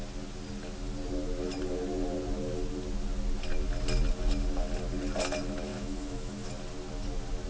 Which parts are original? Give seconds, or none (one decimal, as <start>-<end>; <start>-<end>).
0.0-5.7; 6.5-7.5